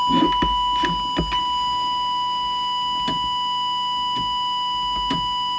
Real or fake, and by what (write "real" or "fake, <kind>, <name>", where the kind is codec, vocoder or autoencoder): real